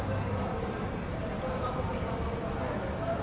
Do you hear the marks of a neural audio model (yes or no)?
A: no